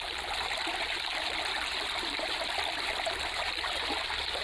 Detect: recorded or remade recorded